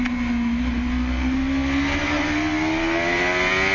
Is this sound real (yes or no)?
yes